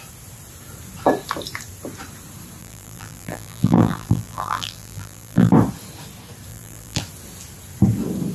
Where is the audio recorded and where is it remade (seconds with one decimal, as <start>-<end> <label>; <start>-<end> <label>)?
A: 0.0-2.6 recorded; 2.6-5.5 remade; 5.5-6.5 recorded; 6.5-7.0 remade; 7.0-8.3 recorded